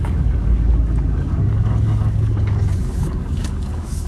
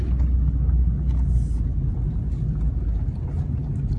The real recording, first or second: second